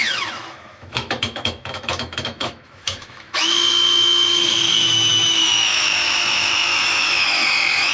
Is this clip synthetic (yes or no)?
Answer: yes